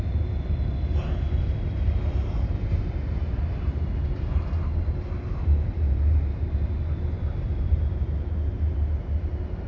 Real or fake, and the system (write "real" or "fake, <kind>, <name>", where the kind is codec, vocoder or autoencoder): real